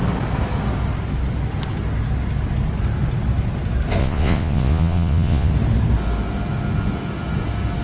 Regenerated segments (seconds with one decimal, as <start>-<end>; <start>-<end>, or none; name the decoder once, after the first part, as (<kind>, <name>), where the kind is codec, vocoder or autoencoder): 4.0-5.5 (vocoder, Vocos)